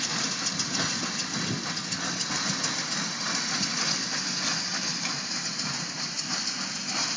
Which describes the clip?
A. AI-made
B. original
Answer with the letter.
B